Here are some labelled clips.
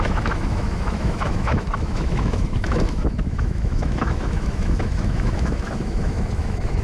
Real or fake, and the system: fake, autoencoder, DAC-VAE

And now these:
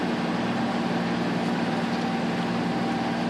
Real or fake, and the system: real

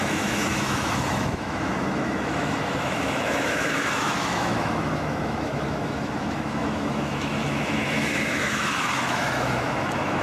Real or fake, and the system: fake, autoencoder, DAC-VAE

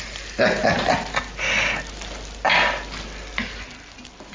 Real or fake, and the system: real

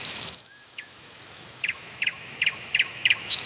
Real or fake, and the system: fake, autoencoder, DAC-VAE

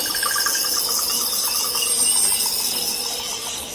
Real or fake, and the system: real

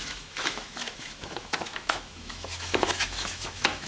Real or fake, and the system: fake, autoencoder, DAC-VAE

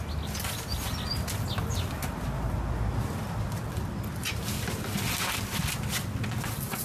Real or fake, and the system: real